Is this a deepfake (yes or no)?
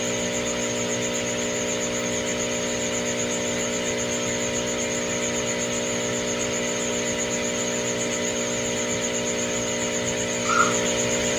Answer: no